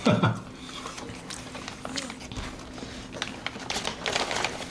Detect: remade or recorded recorded